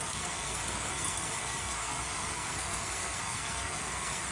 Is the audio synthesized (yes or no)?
yes